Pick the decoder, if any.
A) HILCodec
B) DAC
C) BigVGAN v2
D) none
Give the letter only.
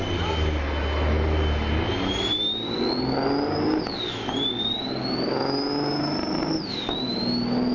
D